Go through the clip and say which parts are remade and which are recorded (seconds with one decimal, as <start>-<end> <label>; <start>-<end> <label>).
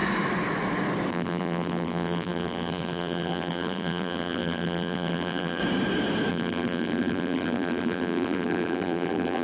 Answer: 0.0-1.1 recorded; 1.1-5.6 remade; 5.6-6.3 recorded; 6.3-9.4 remade